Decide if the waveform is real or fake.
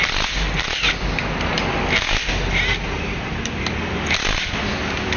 real